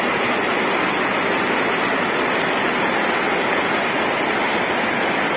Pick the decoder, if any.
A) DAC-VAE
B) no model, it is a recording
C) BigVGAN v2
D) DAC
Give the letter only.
B